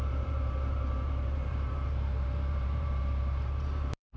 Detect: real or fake fake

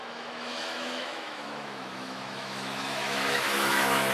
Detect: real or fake fake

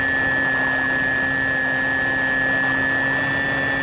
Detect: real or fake real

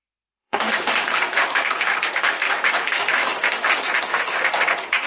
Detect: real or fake fake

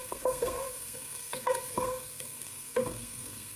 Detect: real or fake fake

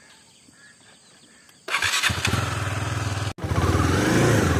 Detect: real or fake real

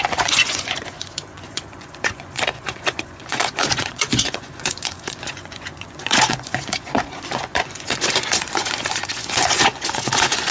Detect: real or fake fake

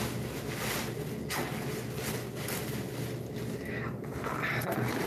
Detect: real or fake real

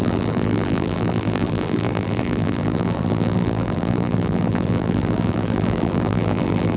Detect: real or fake fake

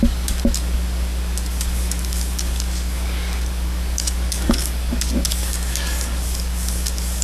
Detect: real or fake fake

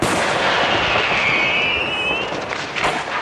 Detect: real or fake real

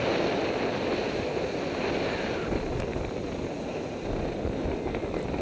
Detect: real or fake real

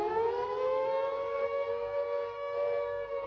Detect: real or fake fake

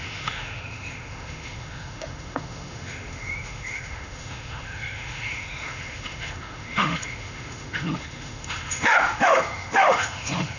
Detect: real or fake fake